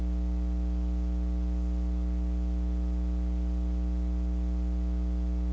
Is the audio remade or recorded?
recorded